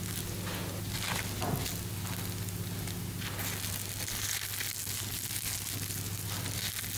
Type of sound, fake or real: real